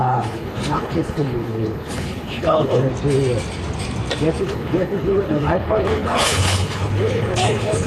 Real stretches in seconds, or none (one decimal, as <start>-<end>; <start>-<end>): 2.9-4.4